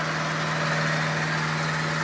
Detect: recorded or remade recorded